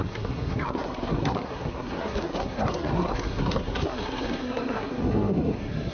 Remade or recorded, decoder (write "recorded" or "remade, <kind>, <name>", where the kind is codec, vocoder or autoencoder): remade, codec, SNAC